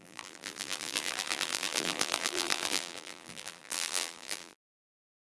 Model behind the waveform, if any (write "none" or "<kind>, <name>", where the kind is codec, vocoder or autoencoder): vocoder, BigVGAN v2